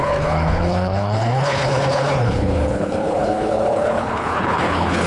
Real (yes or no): no